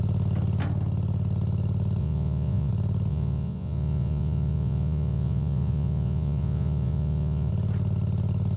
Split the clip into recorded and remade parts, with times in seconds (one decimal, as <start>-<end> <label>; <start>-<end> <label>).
0.0-2.0 recorded; 2.0-2.7 remade; 2.7-3.1 recorded; 3.1-7.5 remade; 7.5-8.6 recorded